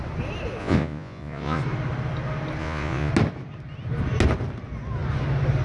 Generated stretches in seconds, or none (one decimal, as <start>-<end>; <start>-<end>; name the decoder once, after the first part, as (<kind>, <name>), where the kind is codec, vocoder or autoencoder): 0.6-1.6 (vocoder, Vocos); 2.6-3.1